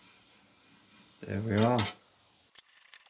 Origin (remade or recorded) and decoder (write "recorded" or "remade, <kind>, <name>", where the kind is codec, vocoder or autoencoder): recorded